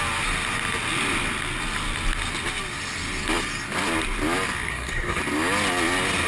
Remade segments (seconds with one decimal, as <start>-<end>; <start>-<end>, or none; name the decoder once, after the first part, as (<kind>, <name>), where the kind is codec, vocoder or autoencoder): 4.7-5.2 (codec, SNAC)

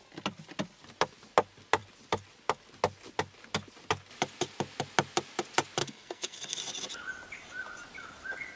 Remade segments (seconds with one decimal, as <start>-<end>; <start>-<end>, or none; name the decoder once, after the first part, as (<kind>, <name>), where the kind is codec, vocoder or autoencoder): 5.8-6.6 (codec, SNAC)

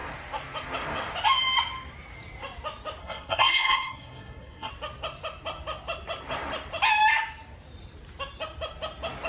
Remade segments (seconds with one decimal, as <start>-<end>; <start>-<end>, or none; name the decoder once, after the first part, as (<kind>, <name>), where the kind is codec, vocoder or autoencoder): 3.0-4.7 (codec, SNAC)